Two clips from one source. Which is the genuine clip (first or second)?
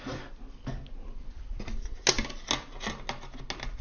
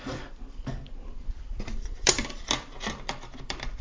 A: first